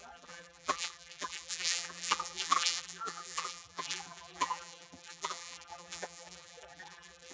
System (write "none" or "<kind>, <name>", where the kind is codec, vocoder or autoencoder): vocoder, BigVGAN v2